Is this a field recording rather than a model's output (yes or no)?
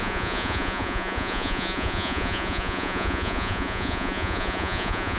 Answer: no